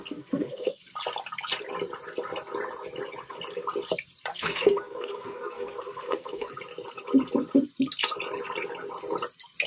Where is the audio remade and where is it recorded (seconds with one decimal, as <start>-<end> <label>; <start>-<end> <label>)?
0.0-0.8 remade; 0.8-4.3 recorded; 4.3-6.5 remade; 6.5-9.7 recorded